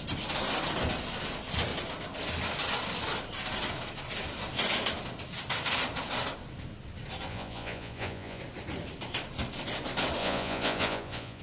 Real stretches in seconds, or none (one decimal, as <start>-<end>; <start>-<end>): 0.0-7.3; 8.4-10.2